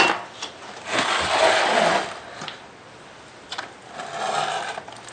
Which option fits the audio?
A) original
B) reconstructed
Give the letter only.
A